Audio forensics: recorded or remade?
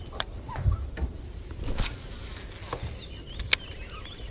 recorded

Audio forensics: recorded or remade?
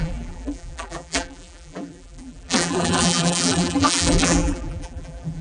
remade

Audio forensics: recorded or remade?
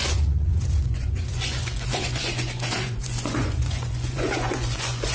remade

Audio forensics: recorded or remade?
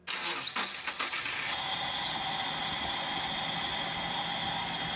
recorded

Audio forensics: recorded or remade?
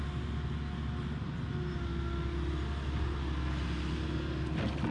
recorded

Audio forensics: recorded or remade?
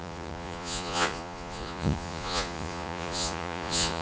remade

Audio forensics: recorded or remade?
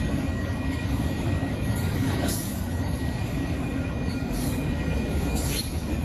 remade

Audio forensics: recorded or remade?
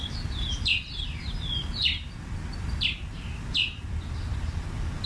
recorded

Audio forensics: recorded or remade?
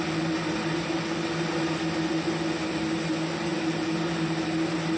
recorded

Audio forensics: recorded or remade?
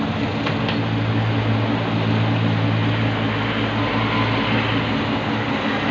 recorded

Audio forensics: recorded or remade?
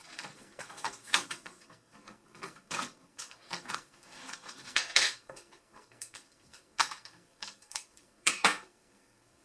remade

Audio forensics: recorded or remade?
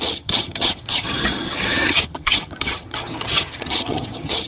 remade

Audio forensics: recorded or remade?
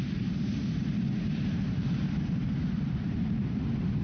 remade